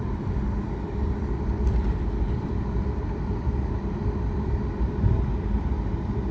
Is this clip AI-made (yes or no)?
yes